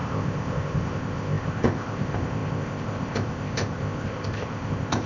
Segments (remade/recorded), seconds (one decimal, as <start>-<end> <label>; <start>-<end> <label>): 0.0-5.1 remade